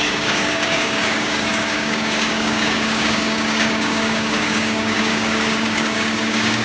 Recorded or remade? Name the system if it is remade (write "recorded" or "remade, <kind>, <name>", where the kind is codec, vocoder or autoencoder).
remade, codec, DAC